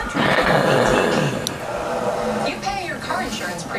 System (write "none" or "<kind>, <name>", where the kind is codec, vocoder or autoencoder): none